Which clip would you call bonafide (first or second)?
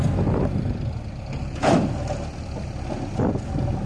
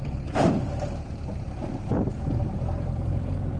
first